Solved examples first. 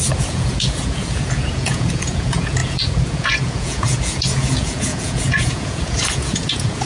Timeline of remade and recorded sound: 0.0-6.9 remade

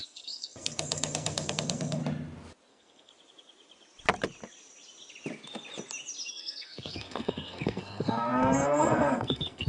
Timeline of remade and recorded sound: 0.0-2.0 remade; 2.0-2.7 recorded; 2.7-3.1 remade; 3.1-6.3 recorded; 6.3-9.7 remade